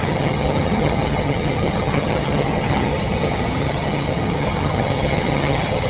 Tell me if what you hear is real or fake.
fake